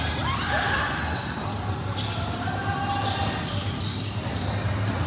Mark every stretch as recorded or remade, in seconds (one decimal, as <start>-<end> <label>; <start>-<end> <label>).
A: 0.0-5.1 recorded